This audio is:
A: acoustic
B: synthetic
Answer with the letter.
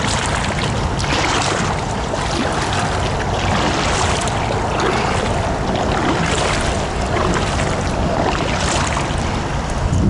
A